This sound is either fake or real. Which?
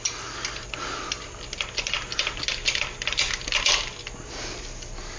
real